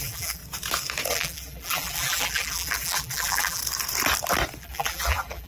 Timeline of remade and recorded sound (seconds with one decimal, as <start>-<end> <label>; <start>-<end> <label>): 0.0-0.4 remade; 0.4-1.1 recorded; 1.1-3.6 remade; 3.6-4.6 recorded; 4.6-5.5 remade